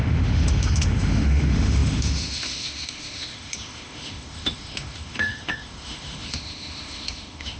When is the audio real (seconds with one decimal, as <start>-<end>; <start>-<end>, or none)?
none